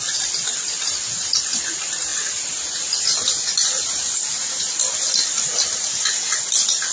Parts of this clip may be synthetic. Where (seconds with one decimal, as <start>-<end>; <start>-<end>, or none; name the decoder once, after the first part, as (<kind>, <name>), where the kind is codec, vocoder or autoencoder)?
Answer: none